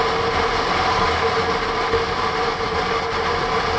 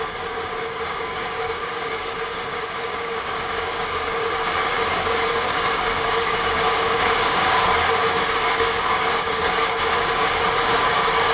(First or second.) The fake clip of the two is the second